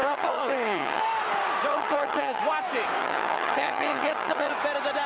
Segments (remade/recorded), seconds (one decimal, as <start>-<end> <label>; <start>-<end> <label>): 0.0-1.0 remade; 1.0-1.7 recorded; 1.7-2.4 remade; 2.4-3.0 recorded; 3.0-4.5 remade; 4.5-5.1 recorded